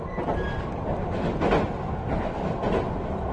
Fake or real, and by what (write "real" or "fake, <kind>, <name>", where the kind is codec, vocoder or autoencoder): real